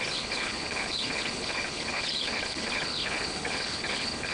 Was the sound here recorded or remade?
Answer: remade